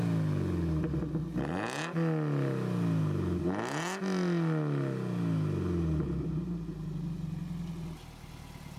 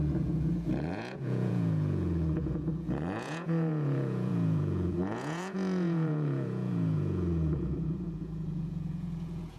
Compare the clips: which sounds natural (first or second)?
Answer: first